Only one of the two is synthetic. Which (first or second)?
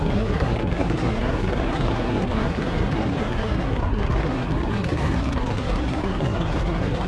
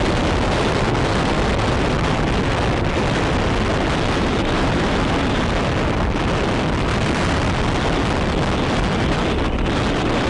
first